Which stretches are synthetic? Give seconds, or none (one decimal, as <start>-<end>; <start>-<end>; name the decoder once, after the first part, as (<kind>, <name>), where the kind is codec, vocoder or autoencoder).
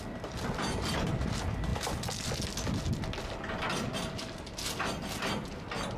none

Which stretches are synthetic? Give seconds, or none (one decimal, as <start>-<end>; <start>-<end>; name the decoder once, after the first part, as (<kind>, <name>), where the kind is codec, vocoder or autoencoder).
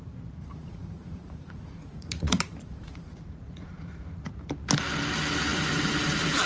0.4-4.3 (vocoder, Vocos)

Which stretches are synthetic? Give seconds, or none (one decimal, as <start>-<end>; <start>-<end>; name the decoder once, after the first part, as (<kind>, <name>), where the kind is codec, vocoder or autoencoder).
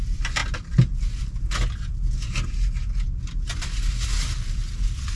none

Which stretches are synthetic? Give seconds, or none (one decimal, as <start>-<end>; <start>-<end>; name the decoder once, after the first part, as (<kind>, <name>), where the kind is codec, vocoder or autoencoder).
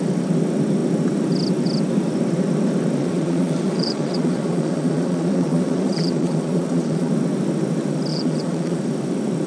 3.0-7.1 (vocoder, Vocos); 8.1-8.8